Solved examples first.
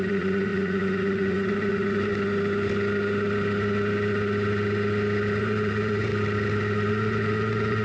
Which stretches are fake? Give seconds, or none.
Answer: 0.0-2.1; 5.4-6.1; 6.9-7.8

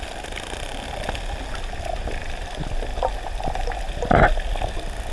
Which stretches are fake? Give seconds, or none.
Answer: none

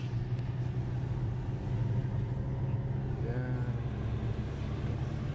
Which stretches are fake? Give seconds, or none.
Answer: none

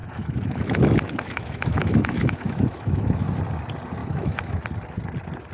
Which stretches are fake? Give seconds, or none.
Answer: 0.0-3.3; 4.0-4.6